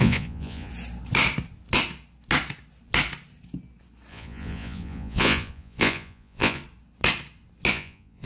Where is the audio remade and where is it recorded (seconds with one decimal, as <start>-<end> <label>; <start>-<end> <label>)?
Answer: 0.0-0.7 remade; 0.7-4.1 recorded; 4.1-6.6 remade; 6.6-7.7 recorded; 7.7-8.3 remade